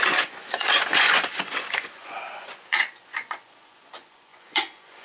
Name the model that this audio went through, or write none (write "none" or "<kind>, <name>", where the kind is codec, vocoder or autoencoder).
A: vocoder, Vocos